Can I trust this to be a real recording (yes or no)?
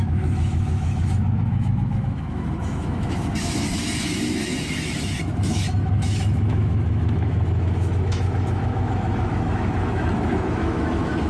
no